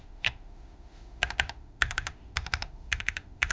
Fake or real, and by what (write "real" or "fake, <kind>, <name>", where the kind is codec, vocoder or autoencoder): fake, autoencoder, DAC-VAE